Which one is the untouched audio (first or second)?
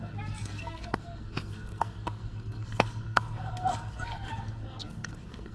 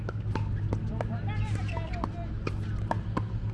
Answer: second